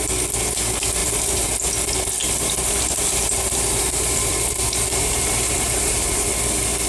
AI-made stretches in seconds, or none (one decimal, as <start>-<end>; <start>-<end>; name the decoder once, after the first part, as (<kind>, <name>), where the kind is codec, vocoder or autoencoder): 1.0-1.5 (vocoder, BigVGAN v2); 2.2-6.3